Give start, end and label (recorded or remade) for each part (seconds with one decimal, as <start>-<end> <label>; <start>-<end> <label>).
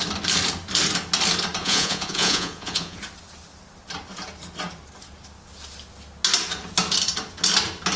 0.0-1.6 recorded; 1.6-3.0 remade; 3.0-8.0 recorded